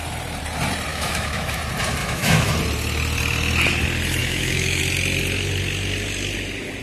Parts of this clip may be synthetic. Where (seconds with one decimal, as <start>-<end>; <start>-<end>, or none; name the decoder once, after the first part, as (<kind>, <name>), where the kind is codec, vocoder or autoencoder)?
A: 0.9-1.6 (autoencoder, DAC-VAE); 2.0-2.5; 4.2-4.8